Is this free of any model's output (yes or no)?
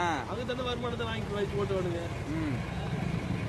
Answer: yes